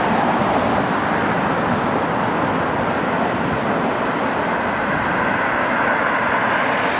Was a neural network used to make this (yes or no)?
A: no